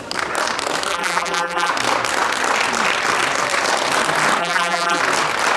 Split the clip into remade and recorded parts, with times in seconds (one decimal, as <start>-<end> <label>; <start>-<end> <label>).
0.0-0.9 recorded; 0.9-1.7 remade; 1.7-4.4 recorded; 4.4-5.0 remade; 5.0-5.6 recorded